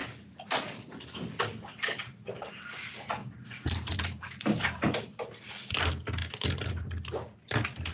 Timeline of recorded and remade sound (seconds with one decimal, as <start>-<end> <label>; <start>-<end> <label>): 0.0-3.2 recorded; 3.2-4.9 remade; 4.9-7.9 recorded